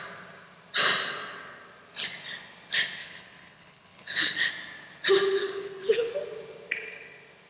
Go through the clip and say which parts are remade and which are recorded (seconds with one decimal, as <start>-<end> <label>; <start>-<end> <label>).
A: 0.0-3.0 recorded; 3.0-4.5 remade; 4.5-5.4 recorded; 5.4-6.1 remade; 6.1-7.5 recorded